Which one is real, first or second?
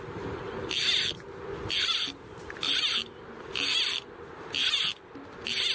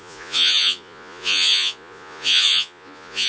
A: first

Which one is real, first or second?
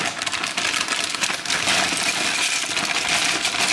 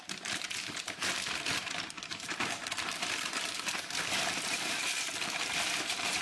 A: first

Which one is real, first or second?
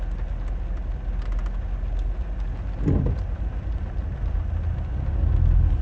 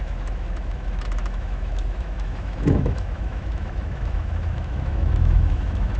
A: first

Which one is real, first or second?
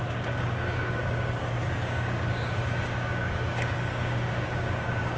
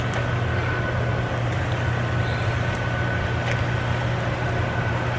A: second